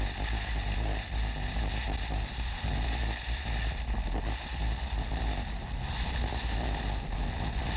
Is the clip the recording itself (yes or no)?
yes